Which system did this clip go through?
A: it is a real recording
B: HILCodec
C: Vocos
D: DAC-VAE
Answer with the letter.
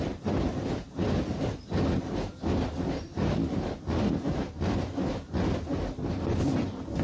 A